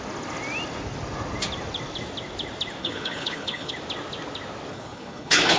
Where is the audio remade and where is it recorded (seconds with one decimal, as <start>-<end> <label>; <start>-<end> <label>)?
0.0-2.8 recorded; 2.8-3.7 remade; 3.7-4.7 recorded; 4.7-5.6 remade